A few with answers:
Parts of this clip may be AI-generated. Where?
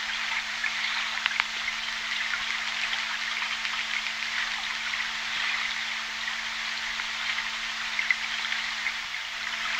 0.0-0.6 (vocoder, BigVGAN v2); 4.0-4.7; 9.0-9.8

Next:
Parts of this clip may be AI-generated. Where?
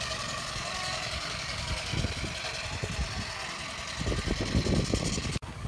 0.0-1.9 (codec, DAC); 5.1-5.7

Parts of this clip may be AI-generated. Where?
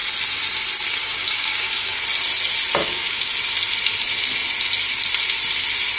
1.0-2.0 (codec, DAC); 2.8-3.3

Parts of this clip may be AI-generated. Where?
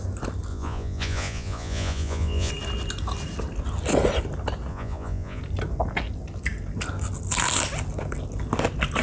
0.5-2.5 (vocoder, Vocos); 4.7-5.4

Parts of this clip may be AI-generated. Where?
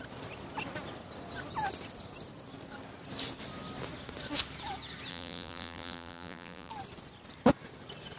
5.1-6.7 (vocoder, BigVGAN v2)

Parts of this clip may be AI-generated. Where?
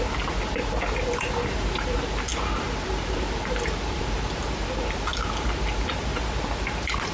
none